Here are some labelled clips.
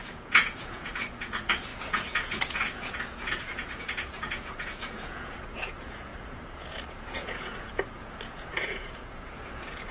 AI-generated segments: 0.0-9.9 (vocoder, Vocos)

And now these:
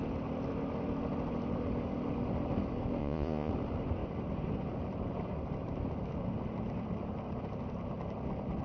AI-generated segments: 3.0-3.5 (vocoder, Vocos)

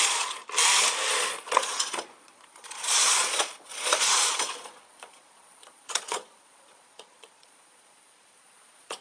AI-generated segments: 0.0-0.4 (vocoder, Vocos); 1.1-9.0

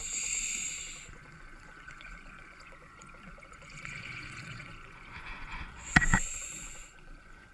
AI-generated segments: 1.1-7.5 (vocoder, Vocos)

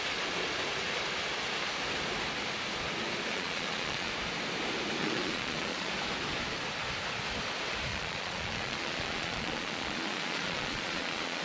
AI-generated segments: 3.3-4.1 (vocoder, Vocos); 5.0-5.9; 7.9-11.4